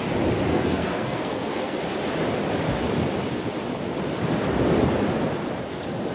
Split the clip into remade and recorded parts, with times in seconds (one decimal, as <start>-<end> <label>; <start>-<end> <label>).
0.0-0.5 recorded; 0.5-1.8 remade; 1.8-6.1 recorded